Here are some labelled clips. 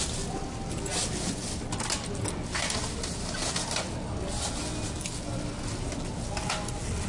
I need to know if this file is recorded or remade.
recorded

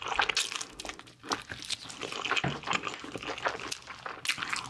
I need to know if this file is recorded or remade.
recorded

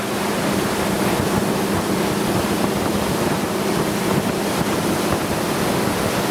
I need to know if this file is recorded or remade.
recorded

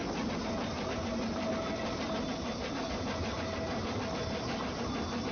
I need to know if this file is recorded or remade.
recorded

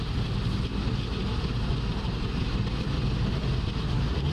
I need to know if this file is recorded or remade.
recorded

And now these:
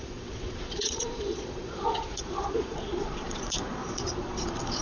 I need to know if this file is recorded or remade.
remade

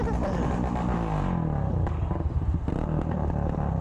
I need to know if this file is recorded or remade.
recorded